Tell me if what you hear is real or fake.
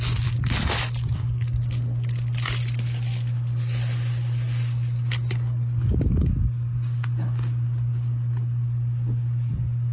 real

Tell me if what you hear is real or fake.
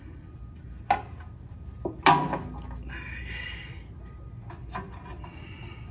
real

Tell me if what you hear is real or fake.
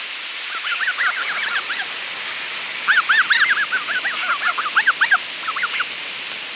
real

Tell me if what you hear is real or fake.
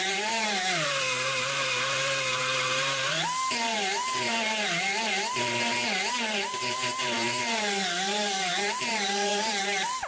fake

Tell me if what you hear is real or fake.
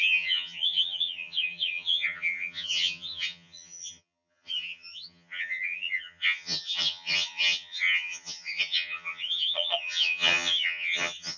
fake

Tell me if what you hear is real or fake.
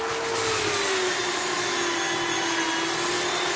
real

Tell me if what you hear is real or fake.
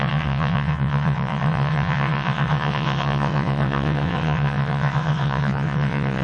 fake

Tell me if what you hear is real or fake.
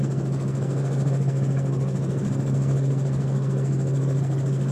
fake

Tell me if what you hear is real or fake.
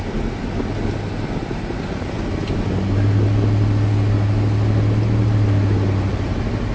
real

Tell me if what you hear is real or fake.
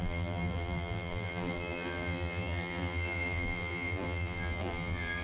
fake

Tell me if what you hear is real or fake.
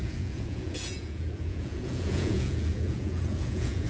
fake